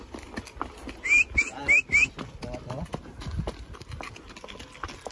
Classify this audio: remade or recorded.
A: recorded